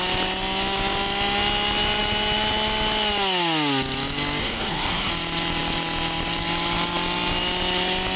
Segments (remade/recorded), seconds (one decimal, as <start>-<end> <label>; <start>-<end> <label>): 0.0-4.4 recorded; 4.4-5.1 remade; 5.1-8.2 recorded